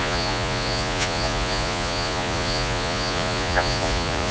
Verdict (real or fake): fake